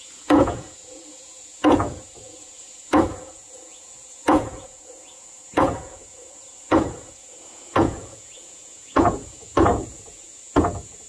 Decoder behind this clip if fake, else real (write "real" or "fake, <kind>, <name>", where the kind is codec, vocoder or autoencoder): fake, vocoder, Vocos